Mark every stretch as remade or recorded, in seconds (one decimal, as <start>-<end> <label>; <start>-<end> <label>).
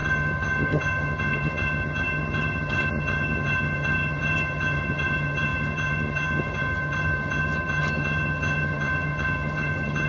0.0-10.1 remade